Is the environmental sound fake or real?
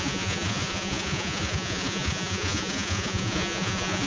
fake